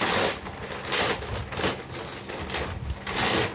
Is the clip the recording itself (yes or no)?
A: yes